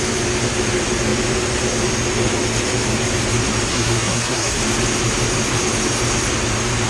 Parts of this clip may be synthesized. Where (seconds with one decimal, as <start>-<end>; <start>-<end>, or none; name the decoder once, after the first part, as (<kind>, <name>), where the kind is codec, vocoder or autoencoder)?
3.7-4.6 (codec, SNAC)